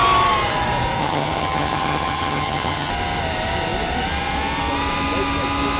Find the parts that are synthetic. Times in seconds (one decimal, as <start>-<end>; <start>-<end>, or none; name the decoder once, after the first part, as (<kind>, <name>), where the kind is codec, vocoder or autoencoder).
1.0-2.9 (vocoder, HiFi-GAN)